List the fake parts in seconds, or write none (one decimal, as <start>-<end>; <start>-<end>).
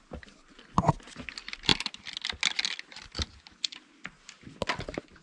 none